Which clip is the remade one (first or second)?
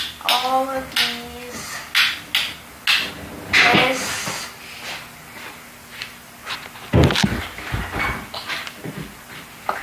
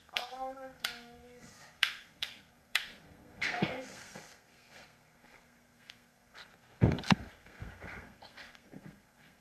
second